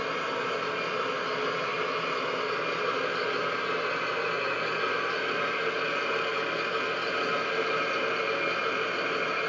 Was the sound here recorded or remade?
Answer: recorded